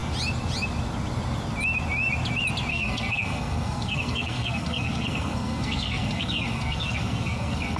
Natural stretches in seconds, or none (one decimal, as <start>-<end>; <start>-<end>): 0.0-2.7